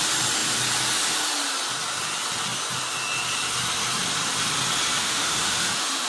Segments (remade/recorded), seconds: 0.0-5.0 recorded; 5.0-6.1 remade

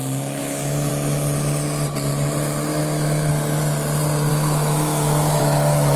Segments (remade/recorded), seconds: 0.0-0.4 recorded; 0.4-0.9 remade; 0.9-2.7 recorded; 2.7-3.3 remade; 3.3-4.3 recorded; 4.3-5.4 remade; 5.4-6.0 recorded

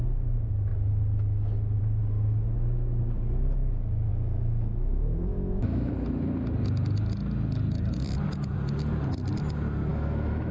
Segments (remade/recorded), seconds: 0.0-4.1 recorded; 4.1-5.9 remade; 5.9-9.9 recorded; 9.9-10.5 remade

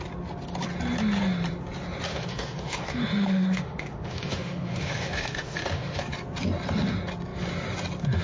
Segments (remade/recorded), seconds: 0.0-2.1 recorded; 2.1-6.0 remade; 6.0-8.2 recorded

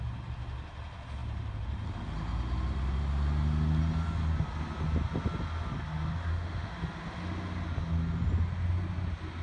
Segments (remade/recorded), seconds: 0.0-6.3 recorded; 6.3-6.8 remade; 6.8-9.4 recorded

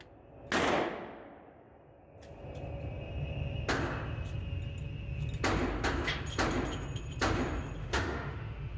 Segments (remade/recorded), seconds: 0.0-7.8 recorded; 7.8-8.8 remade

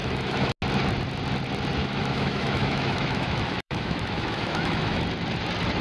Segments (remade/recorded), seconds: 0.0-0.5 remade; 0.5-1.8 recorded; 1.8-5.0 remade; 5.0-5.8 recorded

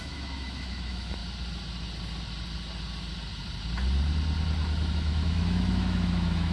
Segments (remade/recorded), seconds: 0.0-1.2 remade; 1.2-4.9 recorded; 4.9-6.5 remade